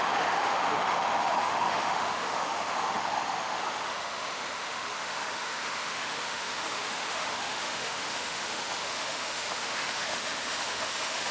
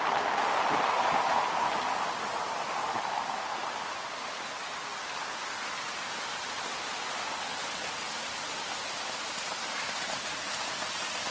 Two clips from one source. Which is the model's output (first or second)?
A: first